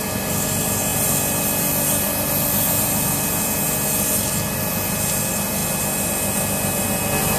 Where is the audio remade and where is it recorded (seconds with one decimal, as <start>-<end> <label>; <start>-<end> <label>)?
0.0-7.4 recorded